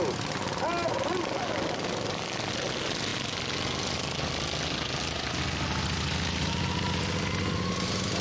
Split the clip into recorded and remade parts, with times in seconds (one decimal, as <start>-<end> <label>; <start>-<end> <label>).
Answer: 0.0-8.2 recorded